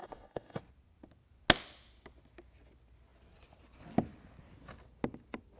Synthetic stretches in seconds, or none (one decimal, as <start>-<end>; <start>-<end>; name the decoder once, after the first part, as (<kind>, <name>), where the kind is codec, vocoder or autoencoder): 0.0-0.6 (codec, DAC)